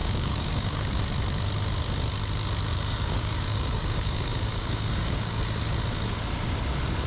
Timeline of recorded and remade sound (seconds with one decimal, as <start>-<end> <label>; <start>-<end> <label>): 0.0-1.0 remade; 1.0-2.7 recorded; 2.7-5.4 remade; 5.4-7.1 recorded